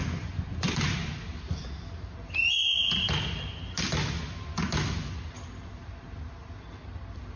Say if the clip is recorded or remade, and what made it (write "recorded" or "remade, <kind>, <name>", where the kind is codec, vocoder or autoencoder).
recorded